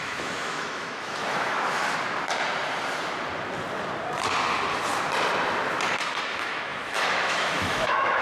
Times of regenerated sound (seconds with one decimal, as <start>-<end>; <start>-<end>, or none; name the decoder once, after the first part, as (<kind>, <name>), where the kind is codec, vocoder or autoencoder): 0.0-1.8 (autoencoder, DAC-VAE); 6.3-8.2